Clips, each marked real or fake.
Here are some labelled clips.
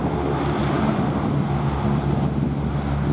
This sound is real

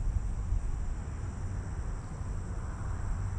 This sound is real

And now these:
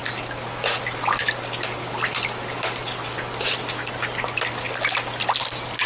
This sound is real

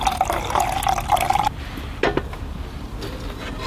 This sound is real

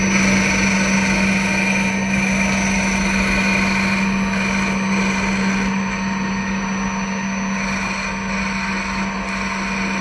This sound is real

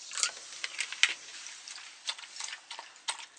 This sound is real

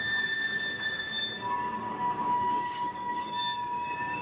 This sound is fake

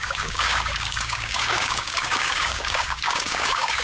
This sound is fake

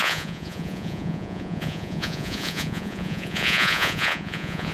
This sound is fake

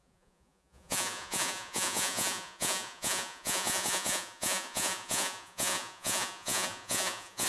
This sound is fake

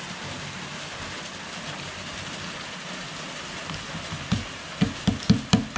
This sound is real